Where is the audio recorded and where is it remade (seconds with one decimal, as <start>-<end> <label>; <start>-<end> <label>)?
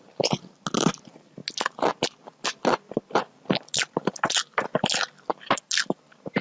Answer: 0.0-6.4 recorded